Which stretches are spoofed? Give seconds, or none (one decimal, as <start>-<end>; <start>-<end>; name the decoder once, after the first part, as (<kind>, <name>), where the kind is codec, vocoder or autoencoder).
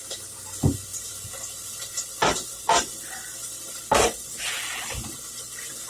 0.9-4.4 (vocoder, BigVGAN v2)